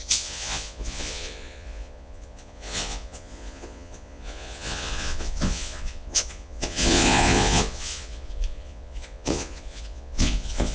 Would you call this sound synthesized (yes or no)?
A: yes